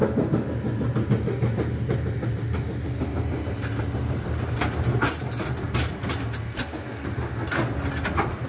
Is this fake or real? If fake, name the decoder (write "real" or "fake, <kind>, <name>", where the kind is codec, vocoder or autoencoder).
real